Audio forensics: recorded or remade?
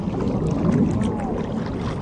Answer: recorded